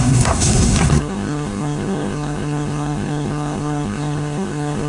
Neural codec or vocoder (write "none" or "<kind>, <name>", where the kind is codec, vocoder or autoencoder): codec, SNAC